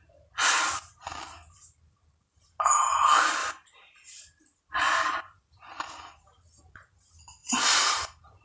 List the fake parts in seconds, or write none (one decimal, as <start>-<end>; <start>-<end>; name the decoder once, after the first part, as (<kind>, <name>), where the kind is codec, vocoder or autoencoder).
3.4-6.6 (vocoder, BigVGAN v2); 7.4-8.4

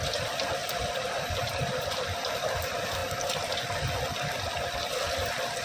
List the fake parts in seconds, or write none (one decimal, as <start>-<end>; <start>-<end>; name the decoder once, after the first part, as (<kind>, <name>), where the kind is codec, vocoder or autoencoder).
0.6-2.5 (vocoder, BigVGAN v2)

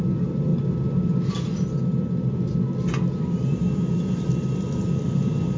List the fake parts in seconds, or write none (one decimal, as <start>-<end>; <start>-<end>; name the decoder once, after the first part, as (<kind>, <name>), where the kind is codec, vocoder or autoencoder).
0.0-0.5 (vocoder, BigVGAN v2); 3.9-5.6

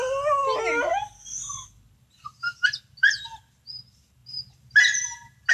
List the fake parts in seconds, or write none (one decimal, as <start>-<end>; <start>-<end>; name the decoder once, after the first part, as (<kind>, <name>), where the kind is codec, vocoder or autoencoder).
none

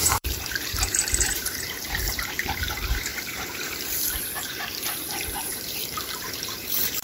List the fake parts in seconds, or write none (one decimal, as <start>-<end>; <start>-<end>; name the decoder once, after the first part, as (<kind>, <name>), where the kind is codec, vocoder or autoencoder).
0.0-7.0 (vocoder, BigVGAN v2)

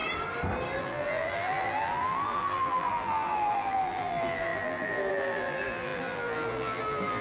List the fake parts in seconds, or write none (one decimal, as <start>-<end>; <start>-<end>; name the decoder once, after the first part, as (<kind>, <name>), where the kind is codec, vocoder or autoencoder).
0.8-7.2 (vocoder, BigVGAN v2)